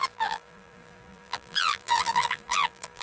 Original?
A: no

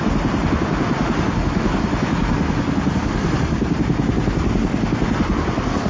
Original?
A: yes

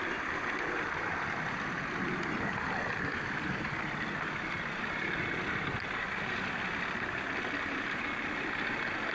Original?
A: yes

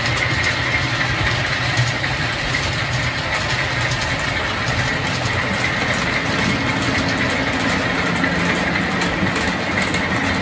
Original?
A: yes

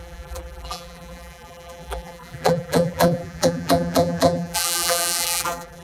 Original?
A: no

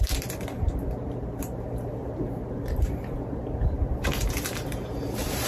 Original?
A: no